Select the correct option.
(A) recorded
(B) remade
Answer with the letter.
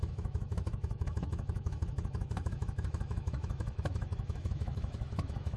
B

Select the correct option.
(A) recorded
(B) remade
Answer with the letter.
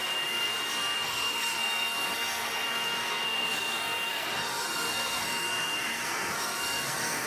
B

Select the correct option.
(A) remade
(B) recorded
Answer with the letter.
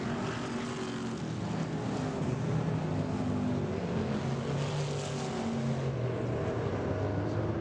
B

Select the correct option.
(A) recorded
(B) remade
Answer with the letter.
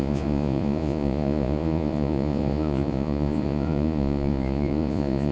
B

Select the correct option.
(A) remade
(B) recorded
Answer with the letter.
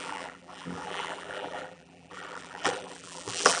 A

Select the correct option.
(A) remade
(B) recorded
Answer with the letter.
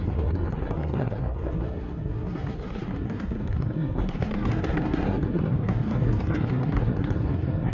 A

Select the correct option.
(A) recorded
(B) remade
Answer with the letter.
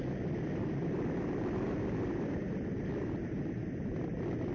A